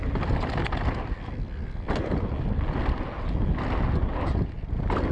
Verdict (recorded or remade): recorded